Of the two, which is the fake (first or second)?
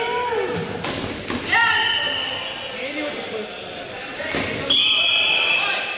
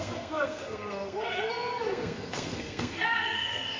second